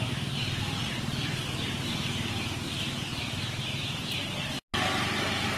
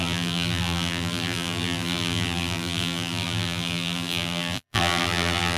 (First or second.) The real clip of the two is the first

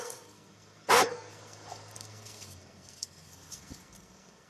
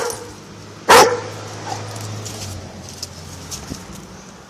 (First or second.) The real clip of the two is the second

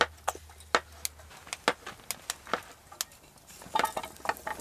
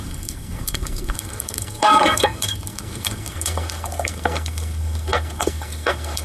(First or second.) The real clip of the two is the first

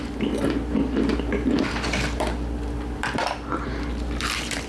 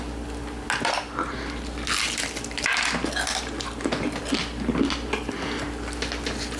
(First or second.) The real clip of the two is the second